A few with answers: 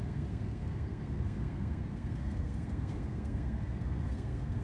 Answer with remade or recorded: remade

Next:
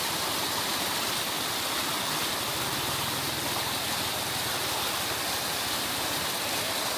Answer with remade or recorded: recorded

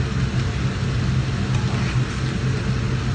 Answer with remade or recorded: recorded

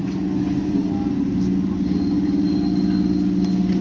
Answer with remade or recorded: recorded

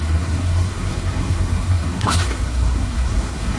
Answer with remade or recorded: remade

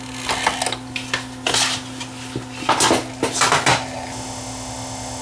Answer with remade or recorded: recorded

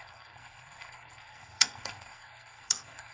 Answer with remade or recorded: remade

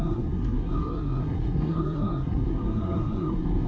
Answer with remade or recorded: remade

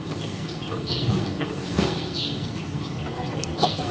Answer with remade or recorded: remade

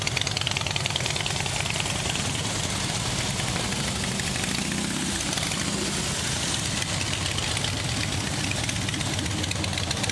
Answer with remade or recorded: recorded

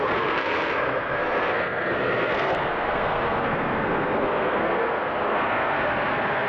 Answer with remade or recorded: remade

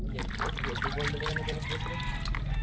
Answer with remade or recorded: recorded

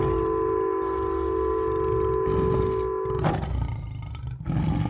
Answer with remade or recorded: recorded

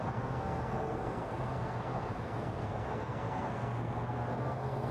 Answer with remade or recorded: remade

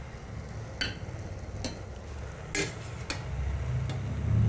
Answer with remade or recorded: recorded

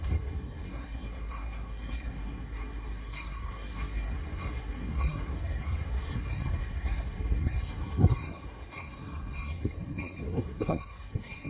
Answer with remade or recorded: remade